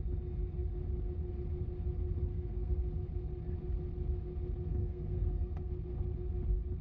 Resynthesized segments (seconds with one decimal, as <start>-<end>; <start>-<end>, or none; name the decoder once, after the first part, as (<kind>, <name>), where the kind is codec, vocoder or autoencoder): 2.3-2.8 (codec, SNAC); 4.8-5.7